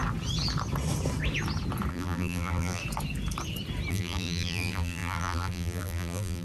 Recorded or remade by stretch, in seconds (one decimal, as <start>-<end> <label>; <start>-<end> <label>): 0.0-1.9 recorded; 1.9-2.8 remade; 2.8-3.9 recorded; 3.9-6.4 remade